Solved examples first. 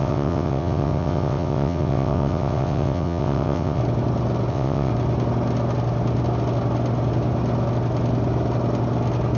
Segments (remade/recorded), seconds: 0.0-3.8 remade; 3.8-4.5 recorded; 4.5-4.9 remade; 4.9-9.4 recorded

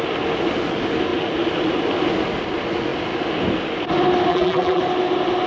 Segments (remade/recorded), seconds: 0.0-4.3 recorded; 4.3-4.8 remade; 4.8-5.5 recorded

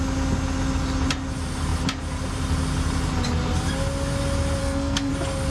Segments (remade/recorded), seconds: 0.0-4.6 recorded; 4.6-5.1 remade; 5.1-5.5 recorded

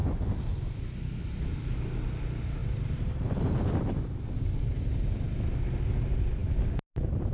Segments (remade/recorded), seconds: 0.0-2.6 recorded; 2.6-4.8 remade; 4.8-7.3 recorded

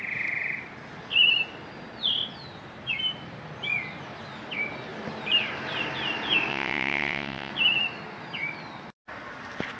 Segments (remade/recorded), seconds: 0.0-6.5 recorded; 6.5-7.5 remade; 7.5-9.8 recorded

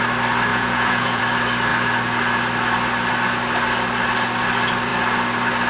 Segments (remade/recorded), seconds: 0.0-0.5 recorded; 0.5-1.2 remade; 1.2-5.7 recorded